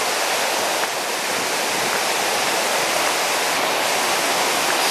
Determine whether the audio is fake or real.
real